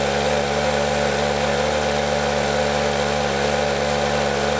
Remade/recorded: recorded